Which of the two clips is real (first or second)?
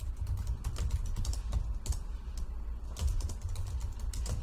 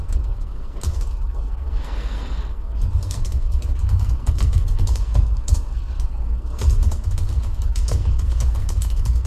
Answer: first